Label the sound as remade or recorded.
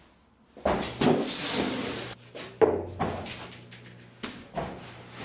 recorded